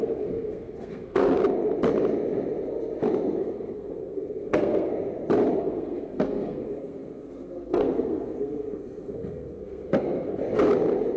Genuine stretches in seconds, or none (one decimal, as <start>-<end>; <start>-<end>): 1.4-3.4; 4.9-5.6; 10.4-11.2